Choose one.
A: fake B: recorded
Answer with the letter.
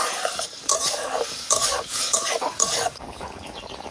A